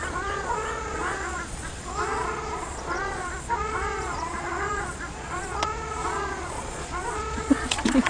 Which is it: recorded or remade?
remade